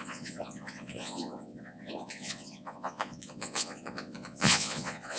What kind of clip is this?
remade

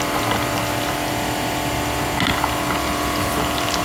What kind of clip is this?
recorded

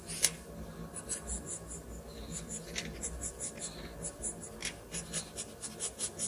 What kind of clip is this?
recorded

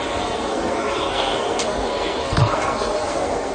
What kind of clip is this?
remade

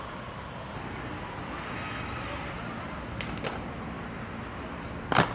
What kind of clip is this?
recorded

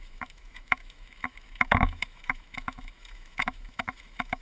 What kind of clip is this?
remade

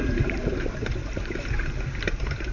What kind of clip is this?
recorded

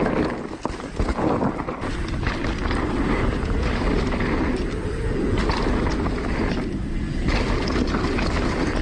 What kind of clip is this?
recorded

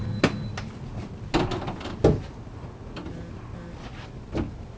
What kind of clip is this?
recorded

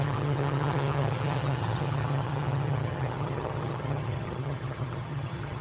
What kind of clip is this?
remade